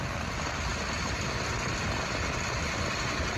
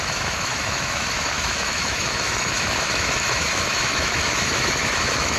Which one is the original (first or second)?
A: first